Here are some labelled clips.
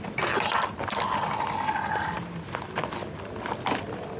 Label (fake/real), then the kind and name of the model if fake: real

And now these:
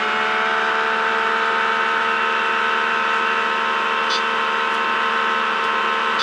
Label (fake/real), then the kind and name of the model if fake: real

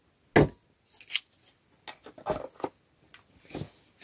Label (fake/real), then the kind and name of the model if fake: real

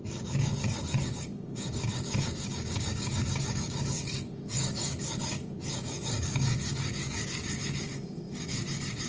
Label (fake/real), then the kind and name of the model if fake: fake, codec, DAC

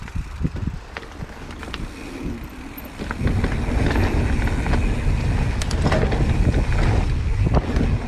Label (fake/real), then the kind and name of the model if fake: real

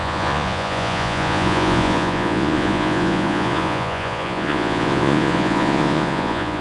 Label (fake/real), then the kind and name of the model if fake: fake, vocoder, Vocos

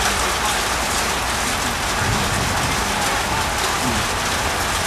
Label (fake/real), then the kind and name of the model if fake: real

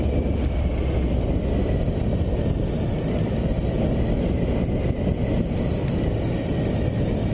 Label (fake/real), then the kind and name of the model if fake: real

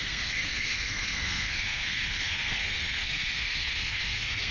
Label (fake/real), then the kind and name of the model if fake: fake, codec, SNAC